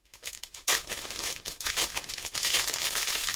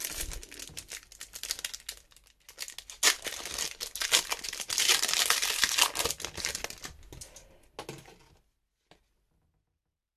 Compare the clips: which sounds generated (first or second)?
first